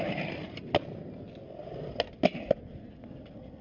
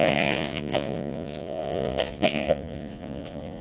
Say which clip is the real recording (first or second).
first